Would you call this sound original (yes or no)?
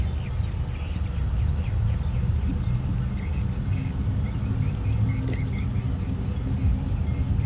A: yes